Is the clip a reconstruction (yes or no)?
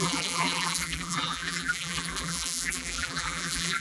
yes